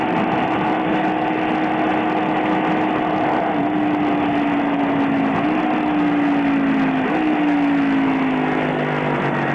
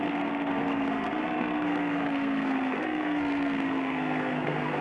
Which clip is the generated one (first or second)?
second